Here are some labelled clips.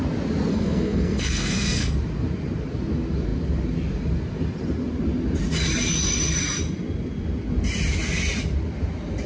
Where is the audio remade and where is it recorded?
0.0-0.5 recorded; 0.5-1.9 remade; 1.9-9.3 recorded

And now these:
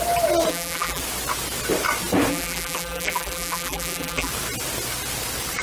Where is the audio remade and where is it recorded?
0.0-0.5 recorded; 0.5-1.0 remade; 1.0-2.3 recorded; 2.3-4.3 remade; 4.3-5.6 recorded

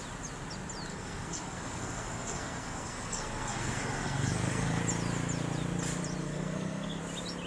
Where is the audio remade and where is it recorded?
0.0-0.9 recorded; 0.9-4.8 remade; 4.8-6.2 recorded; 6.2-7.0 remade; 7.0-7.5 recorded

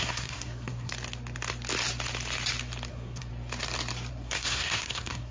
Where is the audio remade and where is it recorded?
0.0-0.9 remade; 0.9-2.9 recorded; 2.9-3.3 remade; 3.3-4.1 recorded; 4.1-5.3 remade

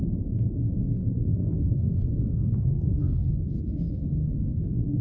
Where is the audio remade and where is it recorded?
0.0-1.0 recorded; 1.0-3.3 remade; 3.3-4.2 recorded; 4.2-5.0 remade

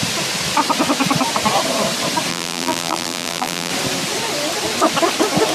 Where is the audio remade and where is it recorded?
0.0-2.3 recorded; 2.3-3.7 remade; 3.7-5.5 recorded